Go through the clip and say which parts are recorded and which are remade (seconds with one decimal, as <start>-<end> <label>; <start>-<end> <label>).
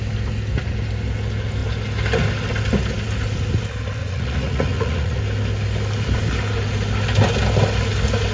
0.0-4.0 recorded; 4.0-5.2 remade; 5.2-8.3 recorded